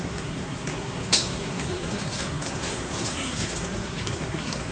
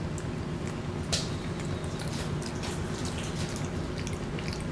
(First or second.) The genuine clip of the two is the second